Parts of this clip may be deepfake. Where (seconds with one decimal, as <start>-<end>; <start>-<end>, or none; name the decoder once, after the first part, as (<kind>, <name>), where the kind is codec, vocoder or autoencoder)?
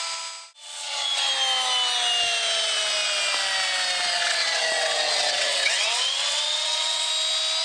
0.6-1.3 (vocoder, WaveNeXt); 4.2-7.1